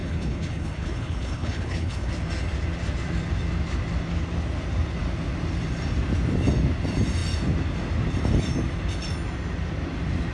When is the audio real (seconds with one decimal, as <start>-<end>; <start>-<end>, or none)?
2.1-10.3

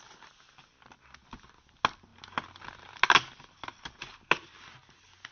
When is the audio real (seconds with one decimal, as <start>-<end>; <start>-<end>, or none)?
0.0-5.3